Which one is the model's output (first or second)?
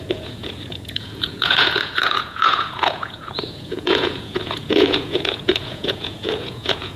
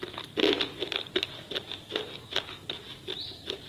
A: first